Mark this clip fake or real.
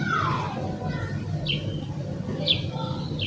real